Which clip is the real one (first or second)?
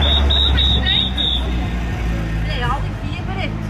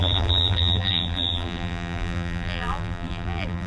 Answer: first